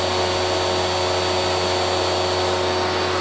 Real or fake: real